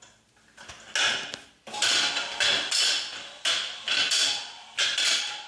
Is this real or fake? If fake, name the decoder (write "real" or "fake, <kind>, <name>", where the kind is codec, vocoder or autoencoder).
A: real